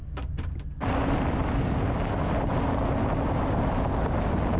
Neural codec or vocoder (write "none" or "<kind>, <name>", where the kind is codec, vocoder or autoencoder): none